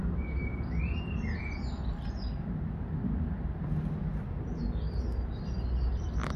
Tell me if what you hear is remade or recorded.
recorded